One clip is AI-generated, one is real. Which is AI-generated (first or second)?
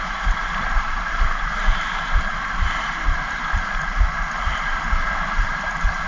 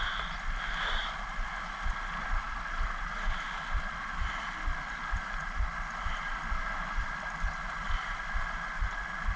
first